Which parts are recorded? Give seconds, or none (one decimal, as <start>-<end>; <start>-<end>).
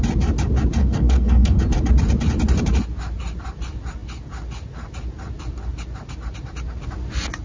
0.0-0.8; 1.6-7.4